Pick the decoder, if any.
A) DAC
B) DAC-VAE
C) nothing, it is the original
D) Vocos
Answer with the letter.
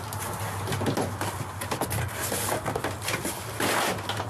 C